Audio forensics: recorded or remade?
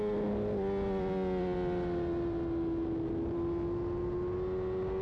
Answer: recorded